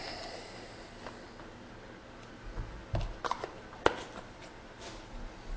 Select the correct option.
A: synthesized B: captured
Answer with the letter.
B